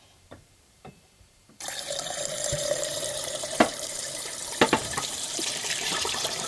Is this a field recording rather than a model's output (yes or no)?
no